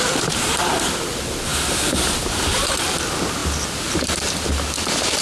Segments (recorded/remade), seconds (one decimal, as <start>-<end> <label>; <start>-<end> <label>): 0.0-5.2 recorded

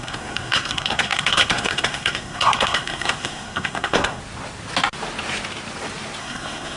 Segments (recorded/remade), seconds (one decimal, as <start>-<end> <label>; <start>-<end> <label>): 0.0-4.2 remade; 4.2-6.2 recorded; 6.2-6.8 remade

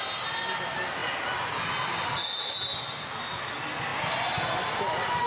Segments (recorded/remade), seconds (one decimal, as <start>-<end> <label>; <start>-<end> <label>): 0.0-5.3 recorded